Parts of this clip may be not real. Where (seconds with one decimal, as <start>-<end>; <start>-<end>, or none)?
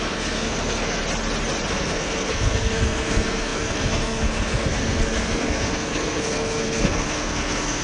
0.0-1.0; 1.7-7.8